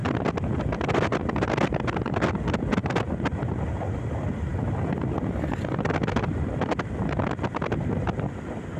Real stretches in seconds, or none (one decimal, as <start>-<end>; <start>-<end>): 0.0-8.8

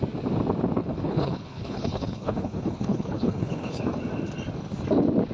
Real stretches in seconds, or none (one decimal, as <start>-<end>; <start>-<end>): 0.0-0.8; 3.8-5.3

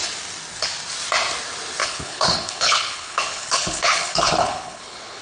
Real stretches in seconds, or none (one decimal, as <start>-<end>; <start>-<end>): 0.0-1.8